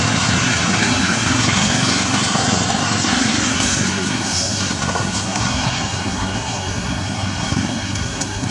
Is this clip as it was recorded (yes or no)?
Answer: no